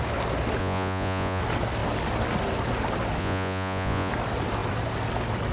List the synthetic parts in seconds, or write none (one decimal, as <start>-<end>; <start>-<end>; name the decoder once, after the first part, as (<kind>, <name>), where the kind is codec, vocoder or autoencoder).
0.6-1.4 (vocoder, Vocos); 3.2-4.1